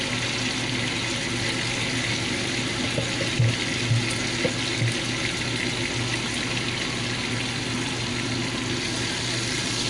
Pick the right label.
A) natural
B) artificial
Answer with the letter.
A